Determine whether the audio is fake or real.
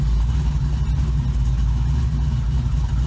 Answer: real